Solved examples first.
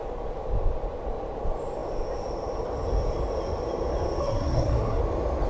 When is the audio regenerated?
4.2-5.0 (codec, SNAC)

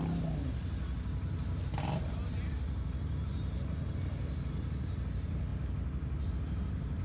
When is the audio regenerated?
none

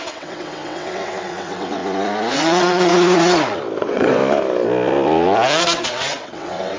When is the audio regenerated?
0.0-1.8 (vocoder, WaveNeXt); 2.3-2.9; 3.8-4.2; 5.6-6.8

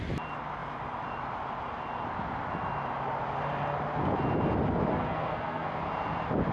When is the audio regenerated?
4.9-5.8 (codec, SNAC)

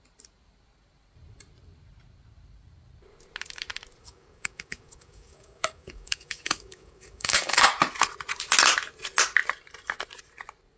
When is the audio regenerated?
4.0-7.7 (codec, DAC)

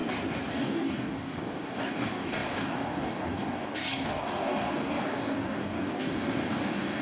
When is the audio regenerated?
0.5-7.0 (codec, DAC)

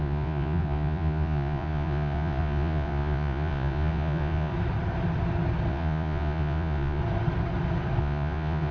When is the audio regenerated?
0.0-4.5 (vocoder, Vocos); 5.7-7.0; 8.0-8.7